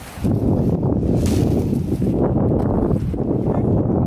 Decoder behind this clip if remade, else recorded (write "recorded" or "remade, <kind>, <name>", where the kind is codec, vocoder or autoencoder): recorded